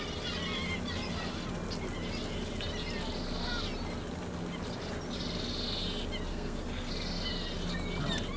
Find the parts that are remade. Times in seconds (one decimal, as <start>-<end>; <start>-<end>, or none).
6.3-6.9